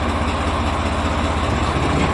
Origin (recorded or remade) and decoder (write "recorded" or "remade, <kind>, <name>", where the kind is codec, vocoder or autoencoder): recorded